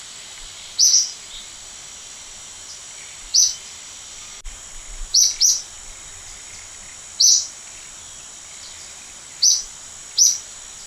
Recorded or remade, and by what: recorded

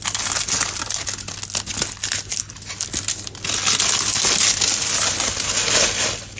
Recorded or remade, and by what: recorded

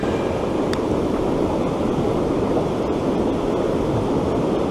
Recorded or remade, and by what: recorded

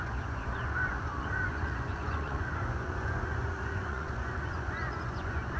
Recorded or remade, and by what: remade, vocoder, Vocos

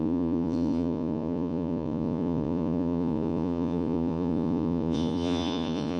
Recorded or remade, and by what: remade, vocoder, Vocos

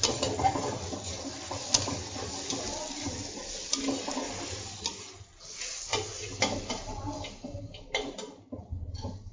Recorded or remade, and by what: recorded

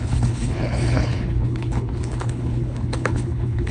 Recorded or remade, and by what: remade, codec, HILCodec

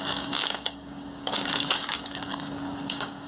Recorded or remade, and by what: remade, codec, DAC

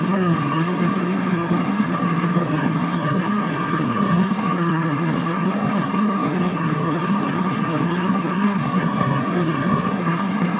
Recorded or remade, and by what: remade, codec, SNAC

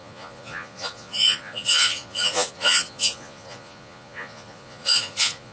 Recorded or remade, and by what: remade, vocoder, Vocos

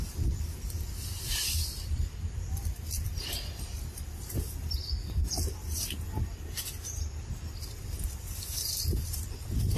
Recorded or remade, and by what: remade, vocoder, BigVGAN v2